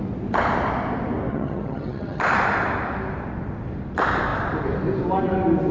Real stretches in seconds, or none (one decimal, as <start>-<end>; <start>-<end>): 0.0-1.3; 2.2-5.7

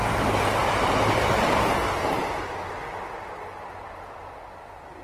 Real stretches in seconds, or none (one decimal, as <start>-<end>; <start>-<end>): 0.0-0.6; 2.4-5.0

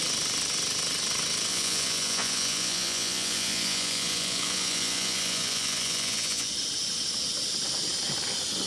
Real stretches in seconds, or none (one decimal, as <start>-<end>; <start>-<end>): 0.0-1.5; 6.5-8.7

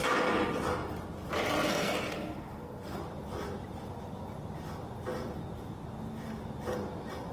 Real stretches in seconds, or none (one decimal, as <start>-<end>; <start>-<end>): 0.0-1.7; 3.0-7.3

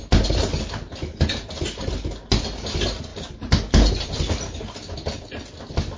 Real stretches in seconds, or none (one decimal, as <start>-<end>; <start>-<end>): 0.0-6.0

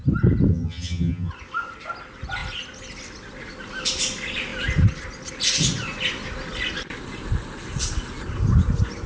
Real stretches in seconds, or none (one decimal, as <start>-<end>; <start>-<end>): 0.0-0.5; 1.3-9.1

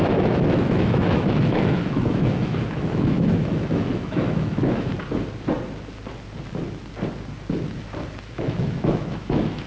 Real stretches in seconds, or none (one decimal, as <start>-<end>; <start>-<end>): 4.9-8.3